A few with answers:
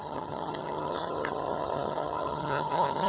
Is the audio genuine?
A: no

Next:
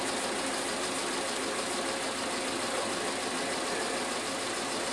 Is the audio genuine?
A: yes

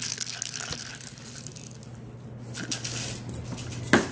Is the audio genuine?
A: yes